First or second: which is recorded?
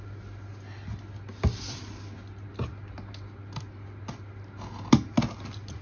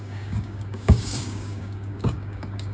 first